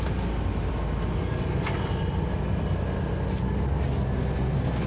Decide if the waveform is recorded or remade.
recorded